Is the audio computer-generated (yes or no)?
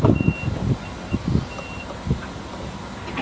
no